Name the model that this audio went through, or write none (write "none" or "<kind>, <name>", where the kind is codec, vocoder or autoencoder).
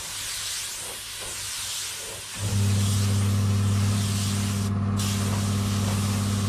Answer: none